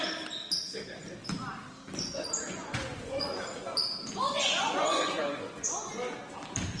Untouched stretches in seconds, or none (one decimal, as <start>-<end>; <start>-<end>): 0.0-2.4; 3.4-4.4; 5.9-6.8